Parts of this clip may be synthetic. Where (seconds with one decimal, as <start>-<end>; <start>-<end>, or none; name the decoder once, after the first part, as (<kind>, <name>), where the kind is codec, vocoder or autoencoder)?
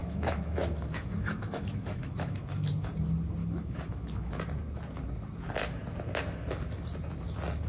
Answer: 0.0-2.7 (autoencoder, DAC-VAE); 3.4-4.4